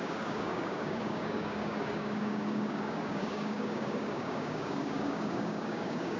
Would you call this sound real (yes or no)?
no